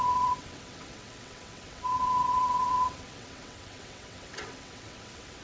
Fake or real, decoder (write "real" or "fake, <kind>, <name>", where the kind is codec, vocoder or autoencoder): fake, vocoder, WaveNeXt